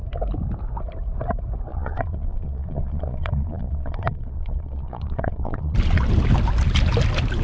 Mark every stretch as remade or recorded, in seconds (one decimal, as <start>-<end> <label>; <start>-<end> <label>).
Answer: 0.0-1.7 recorded; 1.7-6.1 remade; 6.1-7.4 recorded

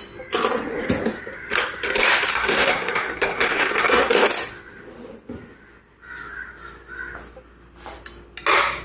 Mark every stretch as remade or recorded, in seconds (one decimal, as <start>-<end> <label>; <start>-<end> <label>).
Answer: 0.0-2.3 recorded; 2.3-4.1 remade; 4.1-8.8 recorded

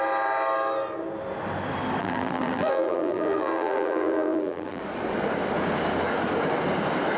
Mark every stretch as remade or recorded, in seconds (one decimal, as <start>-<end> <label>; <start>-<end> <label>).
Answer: 0.0-2.0 recorded; 2.0-4.8 remade; 4.8-7.2 recorded

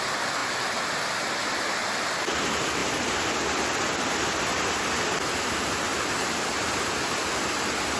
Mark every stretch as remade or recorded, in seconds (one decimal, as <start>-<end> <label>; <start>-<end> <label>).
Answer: 0.0-4.5 recorded; 4.5-5.0 remade; 5.0-5.9 recorded; 5.9-7.2 remade; 7.2-8.0 recorded

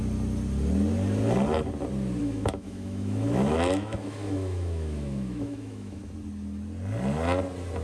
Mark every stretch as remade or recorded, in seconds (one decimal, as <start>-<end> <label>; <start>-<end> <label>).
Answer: 0.0-2.2 recorded; 2.2-6.0 remade; 6.0-7.8 recorded

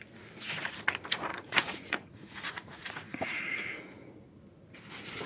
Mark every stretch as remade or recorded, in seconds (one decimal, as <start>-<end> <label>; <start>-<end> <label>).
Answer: 0.0-1.3 recorded; 1.3-4.2 remade; 4.2-5.3 recorded